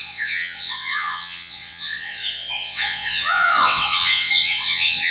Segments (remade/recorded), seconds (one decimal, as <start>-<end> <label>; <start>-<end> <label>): 0.0-5.1 remade